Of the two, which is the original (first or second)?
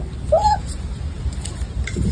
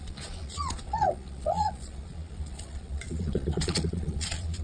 first